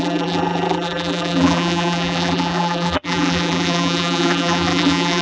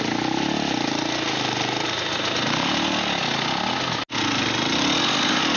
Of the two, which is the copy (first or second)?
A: first